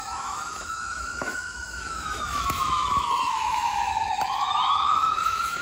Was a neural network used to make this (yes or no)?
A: yes